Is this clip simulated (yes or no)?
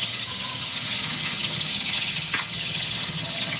yes